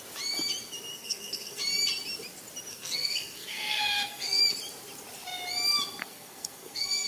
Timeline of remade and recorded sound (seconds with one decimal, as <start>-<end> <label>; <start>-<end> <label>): 0.0-0.9 recorded; 0.9-1.6 remade; 1.6-2.7 recorded; 2.7-4.4 remade; 4.4-6.0 recorded; 6.0-7.1 remade